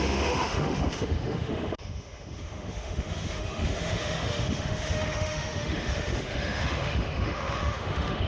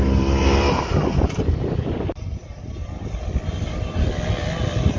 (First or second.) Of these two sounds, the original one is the second